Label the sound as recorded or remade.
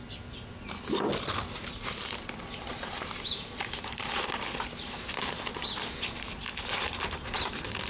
recorded